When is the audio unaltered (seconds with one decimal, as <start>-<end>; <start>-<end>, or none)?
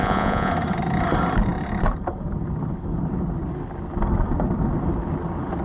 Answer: 0.5-5.6